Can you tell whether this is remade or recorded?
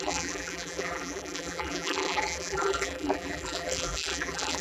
remade